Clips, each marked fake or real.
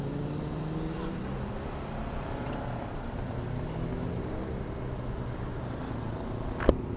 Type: real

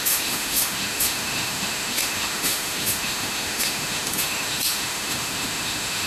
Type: fake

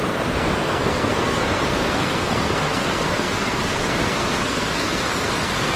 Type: fake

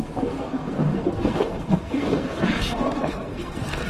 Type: fake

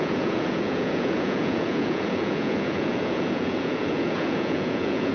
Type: fake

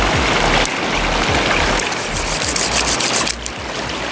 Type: real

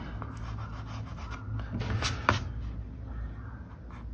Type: real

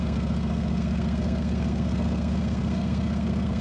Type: fake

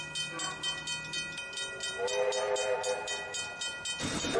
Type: real